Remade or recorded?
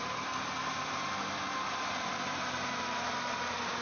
recorded